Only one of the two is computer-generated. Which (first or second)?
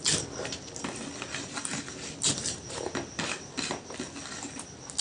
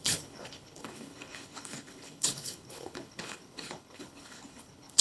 second